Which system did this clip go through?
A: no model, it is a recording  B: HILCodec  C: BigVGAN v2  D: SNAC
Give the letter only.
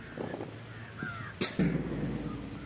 A